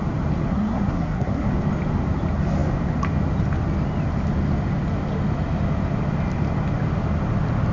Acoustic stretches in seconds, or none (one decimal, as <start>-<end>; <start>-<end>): 0.0-0.5; 1.5-7.7